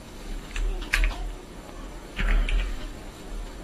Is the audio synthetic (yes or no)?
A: yes